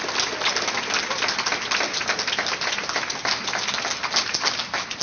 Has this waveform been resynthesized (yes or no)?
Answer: no